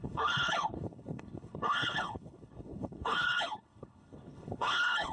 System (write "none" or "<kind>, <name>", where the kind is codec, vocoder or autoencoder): codec, HILCodec